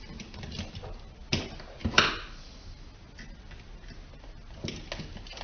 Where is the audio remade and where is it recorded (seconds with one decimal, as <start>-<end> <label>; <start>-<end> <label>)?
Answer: 0.0-5.4 recorded